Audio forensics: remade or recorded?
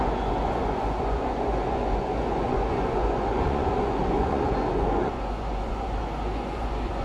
remade